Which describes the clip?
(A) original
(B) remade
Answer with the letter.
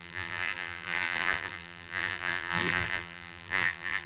B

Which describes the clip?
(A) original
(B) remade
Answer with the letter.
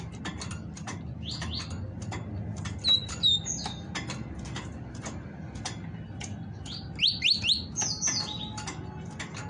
A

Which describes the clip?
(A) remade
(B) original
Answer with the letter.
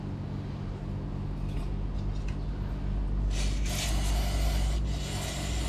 B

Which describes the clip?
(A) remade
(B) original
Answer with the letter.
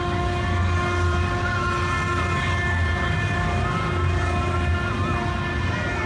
B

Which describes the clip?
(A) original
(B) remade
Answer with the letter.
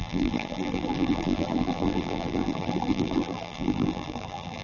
B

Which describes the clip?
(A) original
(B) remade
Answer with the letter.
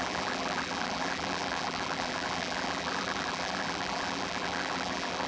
B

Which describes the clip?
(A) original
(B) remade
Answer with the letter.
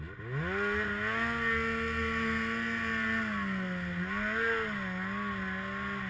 A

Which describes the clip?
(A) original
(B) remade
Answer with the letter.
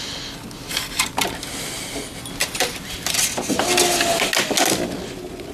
A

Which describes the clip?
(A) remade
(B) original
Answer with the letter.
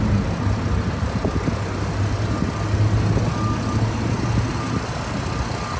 B